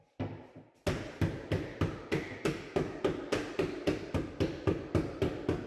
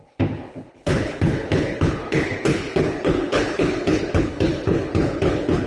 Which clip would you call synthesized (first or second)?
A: second